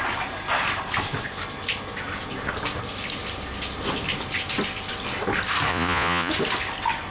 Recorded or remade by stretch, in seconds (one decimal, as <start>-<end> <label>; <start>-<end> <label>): 0.0-5.7 recorded; 5.7-6.3 remade; 6.3-7.1 recorded